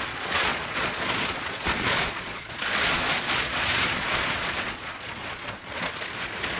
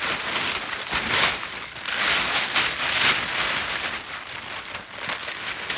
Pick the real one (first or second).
second